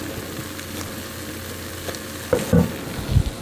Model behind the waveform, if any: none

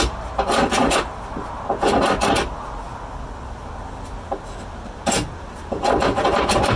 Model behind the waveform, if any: none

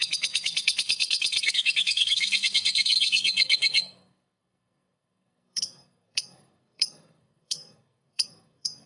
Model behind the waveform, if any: codec, SNAC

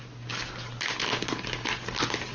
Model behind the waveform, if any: none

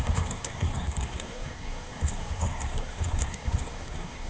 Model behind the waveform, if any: codec, SNAC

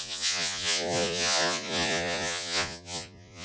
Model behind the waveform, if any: vocoder, Vocos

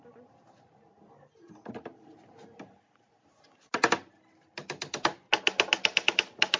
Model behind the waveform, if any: none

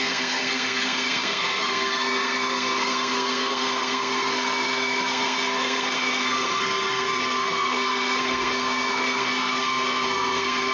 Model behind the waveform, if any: codec, SNAC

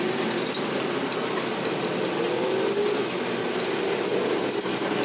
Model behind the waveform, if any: none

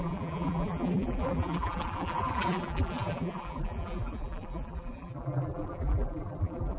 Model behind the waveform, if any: vocoder, BigVGAN v2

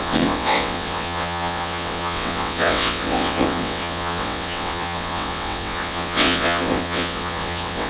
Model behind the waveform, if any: vocoder, WaveNeXt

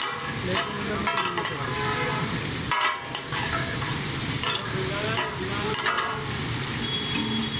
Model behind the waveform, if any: none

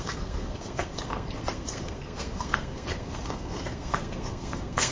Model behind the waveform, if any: codec, SNAC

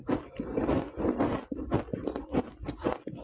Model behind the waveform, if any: none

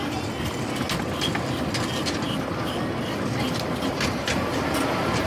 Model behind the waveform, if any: none